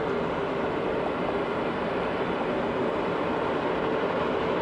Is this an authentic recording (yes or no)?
no